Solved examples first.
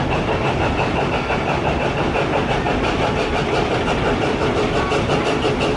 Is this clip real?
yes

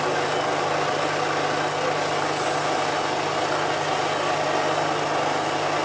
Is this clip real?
yes